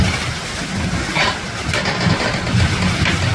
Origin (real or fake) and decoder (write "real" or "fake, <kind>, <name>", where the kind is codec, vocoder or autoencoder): real